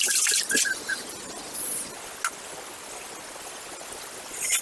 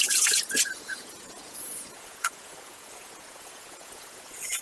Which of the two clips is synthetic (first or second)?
second